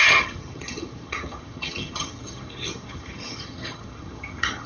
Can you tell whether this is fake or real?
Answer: fake